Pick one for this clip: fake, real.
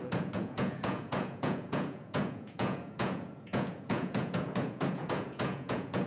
fake